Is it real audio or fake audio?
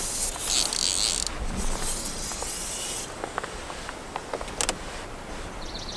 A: real